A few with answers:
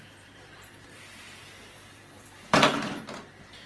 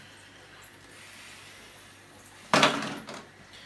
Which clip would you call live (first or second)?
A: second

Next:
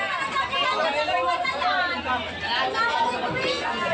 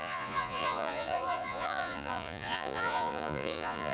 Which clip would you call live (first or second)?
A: first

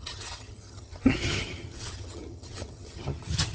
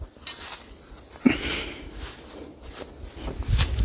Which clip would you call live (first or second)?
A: second